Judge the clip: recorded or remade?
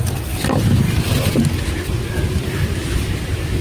recorded